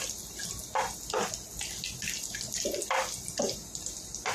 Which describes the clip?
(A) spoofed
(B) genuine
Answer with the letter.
B